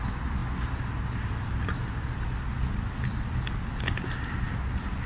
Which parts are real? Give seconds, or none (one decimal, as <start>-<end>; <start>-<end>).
0.0-5.1